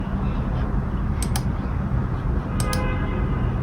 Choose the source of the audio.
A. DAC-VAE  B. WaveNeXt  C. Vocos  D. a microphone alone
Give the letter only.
D